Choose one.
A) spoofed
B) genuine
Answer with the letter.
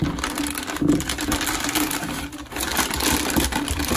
B